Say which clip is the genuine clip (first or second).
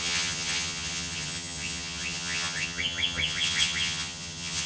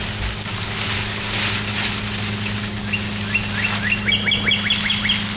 second